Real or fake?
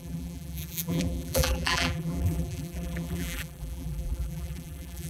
fake